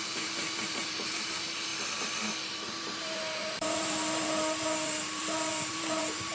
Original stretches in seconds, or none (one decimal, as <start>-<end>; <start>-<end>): 1.7-2.5